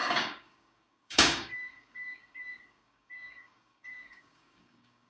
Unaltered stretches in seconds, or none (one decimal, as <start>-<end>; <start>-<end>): none